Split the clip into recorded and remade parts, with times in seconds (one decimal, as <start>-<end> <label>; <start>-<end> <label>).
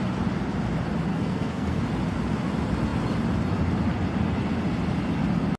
0.0-1.1 recorded; 1.1-1.8 remade; 1.8-5.6 recorded